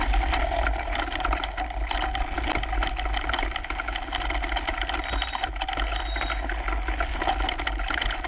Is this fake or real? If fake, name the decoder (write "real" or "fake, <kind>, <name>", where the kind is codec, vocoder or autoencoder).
real